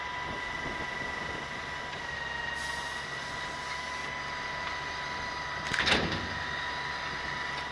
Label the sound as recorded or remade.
recorded